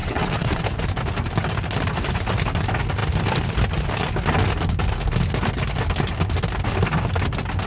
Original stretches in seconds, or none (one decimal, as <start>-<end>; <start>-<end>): 0.6-7.7